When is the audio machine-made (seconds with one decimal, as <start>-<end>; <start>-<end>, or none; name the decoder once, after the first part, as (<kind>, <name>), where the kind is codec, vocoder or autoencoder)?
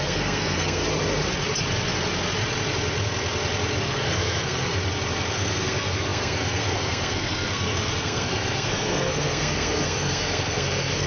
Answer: 0.0-0.8 (codec, SNAC); 3.8-4.7; 5.3-11.1